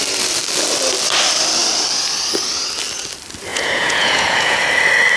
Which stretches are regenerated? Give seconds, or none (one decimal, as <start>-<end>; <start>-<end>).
3.5-4.6